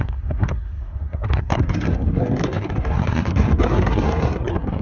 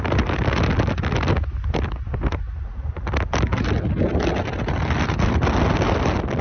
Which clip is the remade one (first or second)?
first